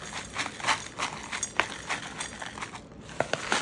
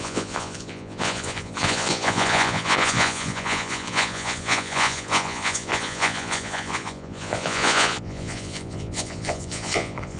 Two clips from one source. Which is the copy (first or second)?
second